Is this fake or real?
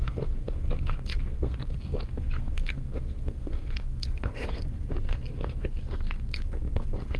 fake